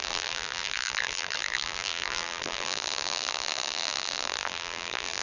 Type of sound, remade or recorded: remade